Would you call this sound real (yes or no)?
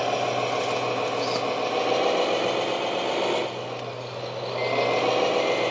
yes